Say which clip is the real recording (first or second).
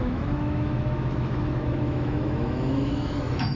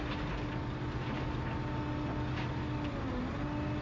second